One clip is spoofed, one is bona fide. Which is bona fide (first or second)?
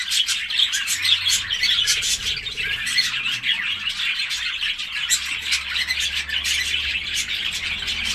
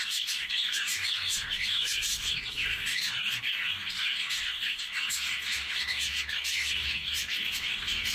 first